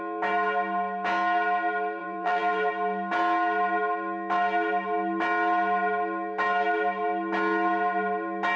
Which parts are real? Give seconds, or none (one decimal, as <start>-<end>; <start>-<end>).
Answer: 0.0-2.0; 2.7-8.6